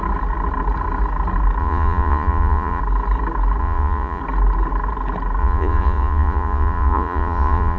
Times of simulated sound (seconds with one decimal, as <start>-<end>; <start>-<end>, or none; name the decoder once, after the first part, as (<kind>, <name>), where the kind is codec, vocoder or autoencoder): 1.6-2.8 (vocoder, Vocos); 3.6-4.2; 5.4-7.8